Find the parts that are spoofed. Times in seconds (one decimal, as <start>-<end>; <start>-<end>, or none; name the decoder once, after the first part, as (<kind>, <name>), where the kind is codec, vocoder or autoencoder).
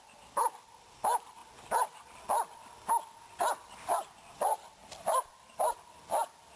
4.8-6.6 (vocoder, BigVGAN v2)